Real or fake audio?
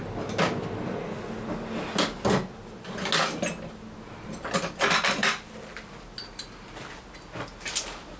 real